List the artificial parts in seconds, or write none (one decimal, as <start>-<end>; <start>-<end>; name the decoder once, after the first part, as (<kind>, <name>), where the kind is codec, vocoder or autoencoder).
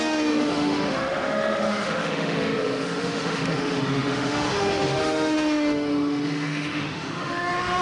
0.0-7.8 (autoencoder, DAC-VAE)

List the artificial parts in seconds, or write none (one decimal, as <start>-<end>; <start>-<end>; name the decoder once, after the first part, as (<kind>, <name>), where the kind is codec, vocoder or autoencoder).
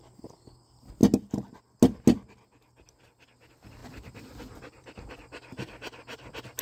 none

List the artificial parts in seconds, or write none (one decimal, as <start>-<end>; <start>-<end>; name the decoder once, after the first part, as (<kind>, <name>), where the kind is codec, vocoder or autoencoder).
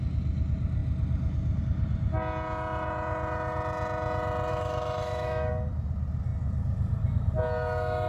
4.5-5.5 (autoencoder, DAC-VAE)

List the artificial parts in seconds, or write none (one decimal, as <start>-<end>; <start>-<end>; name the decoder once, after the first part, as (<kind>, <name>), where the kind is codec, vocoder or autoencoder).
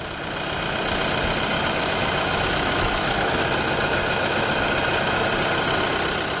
1.5-5.3 (autoencoder, DAC-VAE)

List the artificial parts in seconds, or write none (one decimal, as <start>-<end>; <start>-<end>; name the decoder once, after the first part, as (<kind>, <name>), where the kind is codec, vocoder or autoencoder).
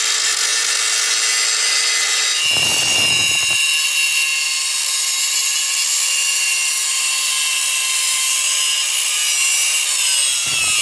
none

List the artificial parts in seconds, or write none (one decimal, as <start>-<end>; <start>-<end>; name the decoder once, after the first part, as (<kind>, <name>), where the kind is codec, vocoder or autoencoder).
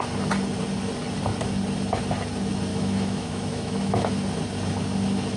2.7-4.1 (autoencoder, DAC-VAE)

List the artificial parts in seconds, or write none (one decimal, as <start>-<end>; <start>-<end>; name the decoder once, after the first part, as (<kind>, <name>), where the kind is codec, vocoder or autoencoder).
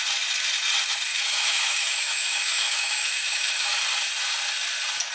1.1-3.8 (autoencoder, DAC-VAE)